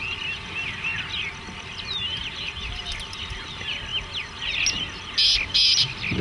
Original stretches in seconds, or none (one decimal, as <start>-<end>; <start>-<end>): 0.0-2.2; 3.2-6.2

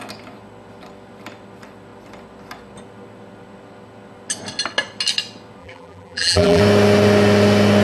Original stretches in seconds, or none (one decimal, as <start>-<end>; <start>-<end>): 0.0-5.6; 6.6-7.8